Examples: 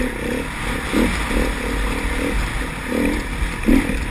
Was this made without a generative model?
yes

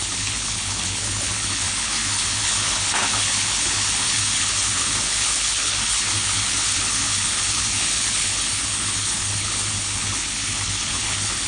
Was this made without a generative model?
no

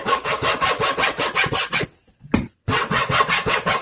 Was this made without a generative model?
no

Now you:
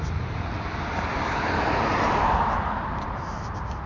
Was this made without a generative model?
yes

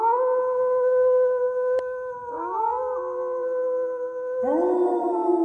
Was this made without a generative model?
yes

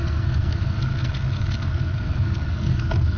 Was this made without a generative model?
no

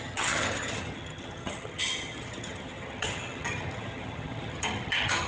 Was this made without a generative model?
no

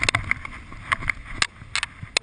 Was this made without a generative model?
yes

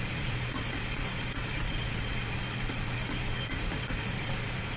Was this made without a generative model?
no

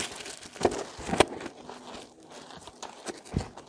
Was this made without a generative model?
yes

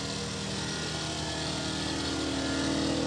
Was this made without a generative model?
yes